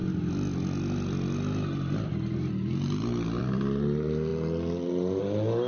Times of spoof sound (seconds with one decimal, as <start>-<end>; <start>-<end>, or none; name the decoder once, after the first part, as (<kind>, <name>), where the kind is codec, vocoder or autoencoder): none